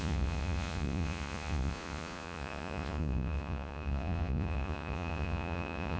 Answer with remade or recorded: remade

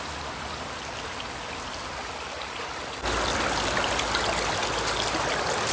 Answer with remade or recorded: recorded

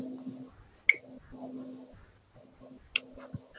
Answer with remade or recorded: recorded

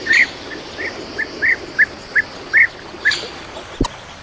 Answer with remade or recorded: recorded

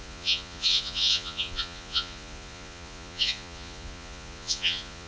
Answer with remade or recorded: remade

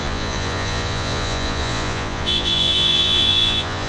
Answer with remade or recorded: remade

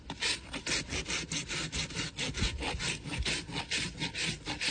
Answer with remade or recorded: recorded